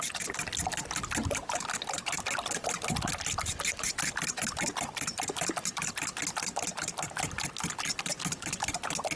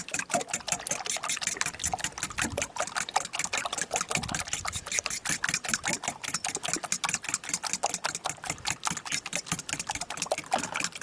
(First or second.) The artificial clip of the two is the first